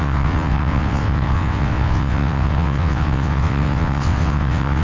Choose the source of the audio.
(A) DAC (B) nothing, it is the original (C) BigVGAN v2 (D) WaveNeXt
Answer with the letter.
D